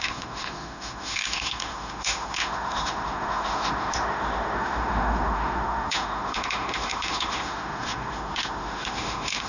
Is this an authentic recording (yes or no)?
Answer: no